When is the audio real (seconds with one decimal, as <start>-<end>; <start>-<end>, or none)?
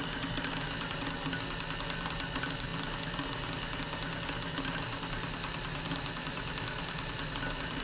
0.0-7.8